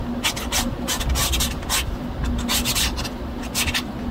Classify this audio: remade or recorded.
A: recorded